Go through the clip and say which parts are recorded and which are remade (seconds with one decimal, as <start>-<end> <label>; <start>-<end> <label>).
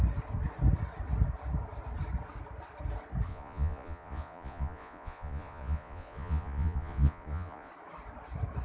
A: 0.0-3.3 recorded; 3.3-7.7 remade; 7.7-8.6 recorded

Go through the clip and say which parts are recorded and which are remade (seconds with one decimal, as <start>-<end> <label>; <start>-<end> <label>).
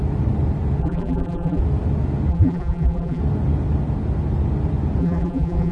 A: 0.0-0.8 recorded; 0.8-1.6 remade; 1.6-2.3 recorded; 2.3-3.2 remade; 3.2-5.0 recorded; 5.0-5.7 remade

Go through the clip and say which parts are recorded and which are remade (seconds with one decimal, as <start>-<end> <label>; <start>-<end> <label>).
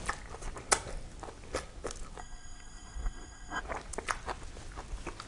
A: 0.0-2.2 recorded; 2.2-3.6 remade; 3.6-5.3 recorded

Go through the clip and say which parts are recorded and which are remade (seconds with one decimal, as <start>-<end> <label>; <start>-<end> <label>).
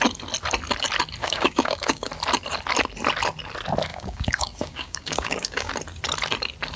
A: 0.0-1.2 recorded; 1.2-2.1 remade; 2.1-3.9 recorded; 3.9-5.7 remade; 5.7-6.8 recorded